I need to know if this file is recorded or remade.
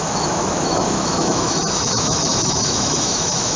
remade